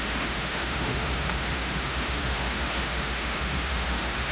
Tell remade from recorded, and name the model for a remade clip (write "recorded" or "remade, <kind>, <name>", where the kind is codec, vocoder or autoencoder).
remade, autoencoder, DAC-VAE